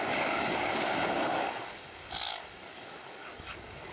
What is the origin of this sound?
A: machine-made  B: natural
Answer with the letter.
A